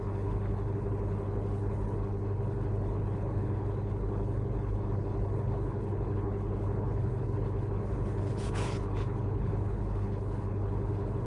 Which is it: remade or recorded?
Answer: remade